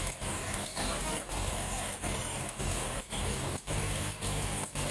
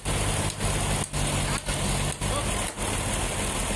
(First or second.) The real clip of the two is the second